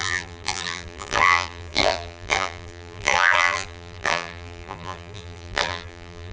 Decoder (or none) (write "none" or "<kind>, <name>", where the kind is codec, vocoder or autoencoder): vocoder, BigVGAN v2